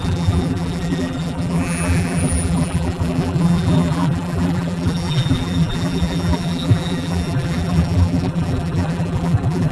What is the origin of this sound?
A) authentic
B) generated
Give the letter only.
B